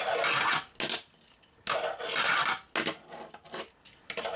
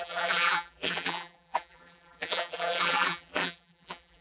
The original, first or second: first